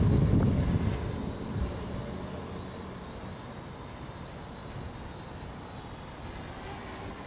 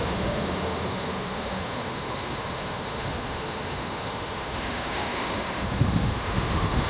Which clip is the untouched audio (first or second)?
first